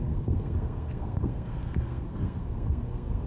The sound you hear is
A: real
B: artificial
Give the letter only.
B